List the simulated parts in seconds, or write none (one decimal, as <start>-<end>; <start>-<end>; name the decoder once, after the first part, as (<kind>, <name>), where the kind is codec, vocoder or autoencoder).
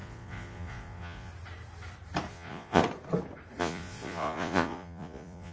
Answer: 0.0-1.3 (vocoder, Vocos); 2.3-2.8; 3.6-5.5